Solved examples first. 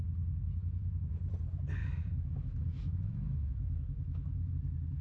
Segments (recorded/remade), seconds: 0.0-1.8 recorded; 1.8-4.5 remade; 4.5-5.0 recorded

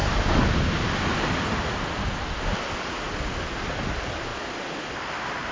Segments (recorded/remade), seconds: 0.0-5.5 recorded

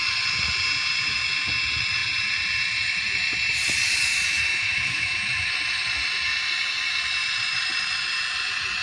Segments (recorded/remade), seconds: 0.0-4.5 recorded; 4.5-5.5 remade; 5.5-8.8 recorded

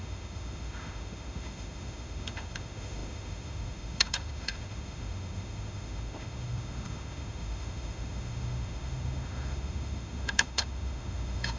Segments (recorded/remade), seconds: 0.0-11.6 remade

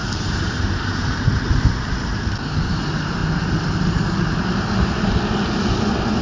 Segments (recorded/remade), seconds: 0.0-1.3 remade; 1.3-6.2 recorded

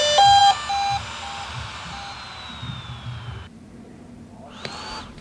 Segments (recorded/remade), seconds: 0.0-5.2 recorded

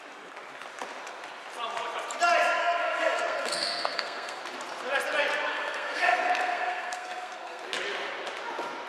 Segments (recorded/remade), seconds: 0.0-2.6 recorded; 2.6-4.4 remade; 4.4-5.5 recorded; 5.5-7.6 remade; 7.6-8.9 recorded

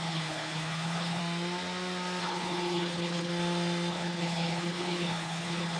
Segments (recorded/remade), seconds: 0.0-1.2 remade; 1.2-2.2 recorded; 2.2-3.3 remade; 3.3-3.9 recorded; 3.9-5.8 remade